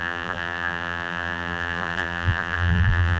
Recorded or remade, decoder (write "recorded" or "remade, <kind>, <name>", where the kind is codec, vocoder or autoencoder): remade, vocoder, BigVGAN v2